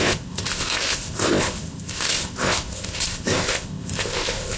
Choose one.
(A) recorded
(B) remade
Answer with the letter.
B